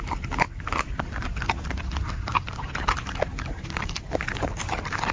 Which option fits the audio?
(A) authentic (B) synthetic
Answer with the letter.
B